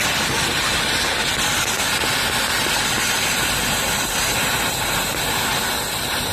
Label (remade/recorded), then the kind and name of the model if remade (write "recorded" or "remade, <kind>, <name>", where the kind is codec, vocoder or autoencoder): recorded